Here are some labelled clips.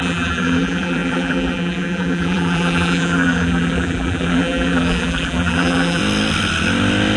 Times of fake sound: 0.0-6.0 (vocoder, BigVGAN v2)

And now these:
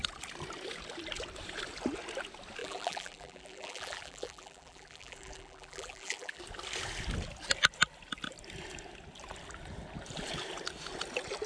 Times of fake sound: 2.6-6.4 (vocoder, BigVGAN v2)